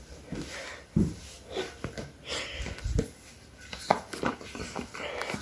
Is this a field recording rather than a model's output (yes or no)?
yes